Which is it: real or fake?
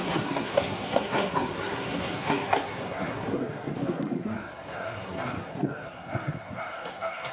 fake